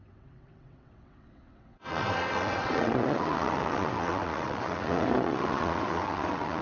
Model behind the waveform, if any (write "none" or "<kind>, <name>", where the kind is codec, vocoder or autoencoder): vocoder, WaveNeXt